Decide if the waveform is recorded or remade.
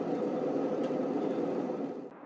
recorded